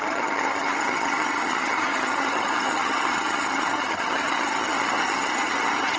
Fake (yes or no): yes